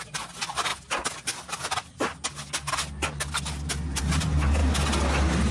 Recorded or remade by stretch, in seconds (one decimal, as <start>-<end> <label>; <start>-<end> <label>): 0.0-5.5 recorded